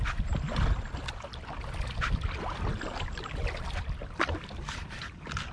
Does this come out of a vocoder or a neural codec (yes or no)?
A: no